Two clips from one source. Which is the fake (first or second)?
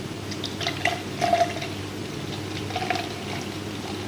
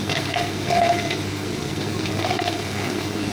second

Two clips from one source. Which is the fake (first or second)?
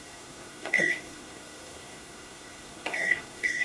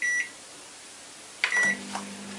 first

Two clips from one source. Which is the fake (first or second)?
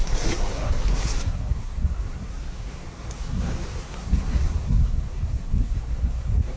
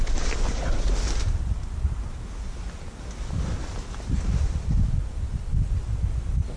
first